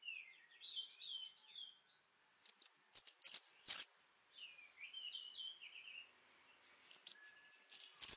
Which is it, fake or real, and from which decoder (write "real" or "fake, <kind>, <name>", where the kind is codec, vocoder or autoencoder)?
real